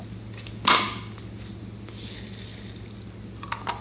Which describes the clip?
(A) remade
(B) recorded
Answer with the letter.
B